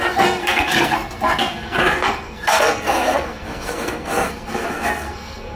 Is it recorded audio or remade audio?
remade